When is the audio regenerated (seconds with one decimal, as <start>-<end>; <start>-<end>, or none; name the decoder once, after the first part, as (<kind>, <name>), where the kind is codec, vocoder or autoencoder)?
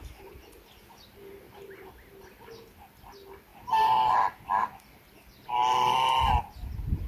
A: 3.5-5.0 (vocoder, BigVGAN v2)